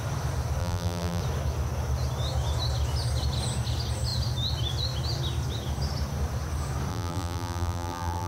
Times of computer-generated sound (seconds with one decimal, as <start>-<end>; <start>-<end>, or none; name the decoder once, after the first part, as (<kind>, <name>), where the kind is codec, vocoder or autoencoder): 0.6-1.2 (vocoder, BigVGAN v2); 6.9-8.3